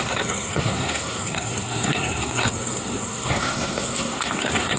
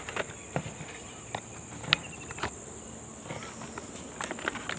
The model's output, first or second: first